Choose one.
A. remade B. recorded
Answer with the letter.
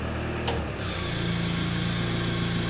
B